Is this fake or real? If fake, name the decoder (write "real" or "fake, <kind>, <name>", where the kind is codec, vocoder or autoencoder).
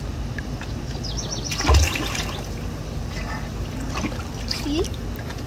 real